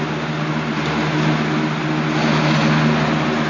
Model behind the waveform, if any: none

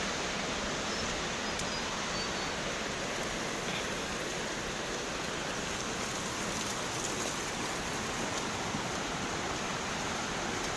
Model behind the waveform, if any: none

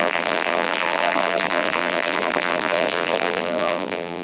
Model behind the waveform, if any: vocoder, BigVGAN v2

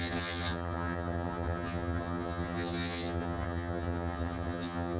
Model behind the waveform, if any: vocoder, HiFi-GAN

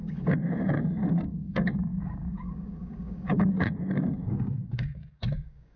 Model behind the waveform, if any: codec, DAC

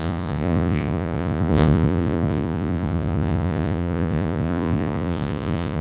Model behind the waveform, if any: vocoder, Vocos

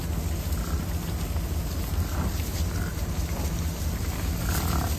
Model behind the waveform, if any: none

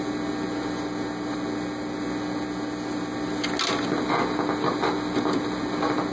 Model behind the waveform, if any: none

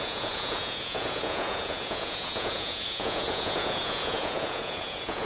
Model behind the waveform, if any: vocoder, Vocos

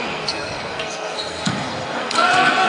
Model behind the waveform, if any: codec, SNAC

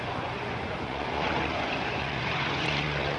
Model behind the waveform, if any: vocoder, Vocos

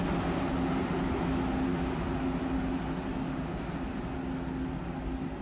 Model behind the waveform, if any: none